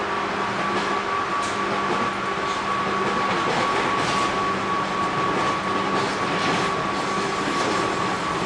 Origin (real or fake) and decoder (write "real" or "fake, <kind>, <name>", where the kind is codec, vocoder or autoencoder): real